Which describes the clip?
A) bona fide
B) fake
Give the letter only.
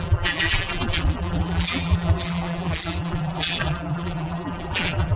B